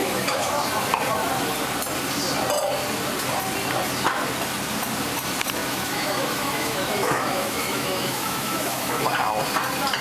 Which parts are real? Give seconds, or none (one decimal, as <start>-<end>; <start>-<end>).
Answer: 0.6-5.6; 9.0-10.0